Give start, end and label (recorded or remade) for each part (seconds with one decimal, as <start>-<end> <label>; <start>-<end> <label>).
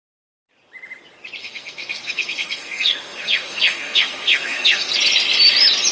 0.0-1.4 recorded; 1.4-4.9 remade; 4.9-5.9 recorded